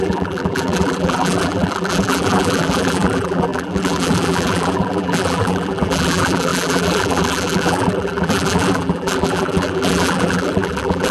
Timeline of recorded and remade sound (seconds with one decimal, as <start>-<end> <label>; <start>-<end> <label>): 0.0-11.1 remade

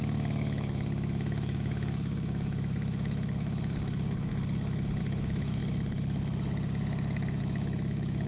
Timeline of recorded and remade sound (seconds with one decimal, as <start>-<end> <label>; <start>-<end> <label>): 0.0-4.3 remade; 4.3-5.0 recorded; 5.0-5.6 remade; 5.6-7.4 recorded; 7.4-8.3 remade